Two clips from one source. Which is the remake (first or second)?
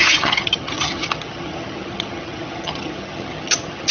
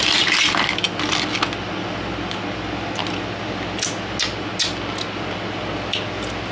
first